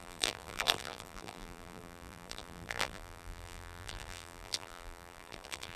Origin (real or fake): fake